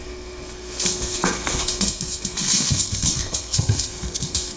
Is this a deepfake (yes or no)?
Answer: yes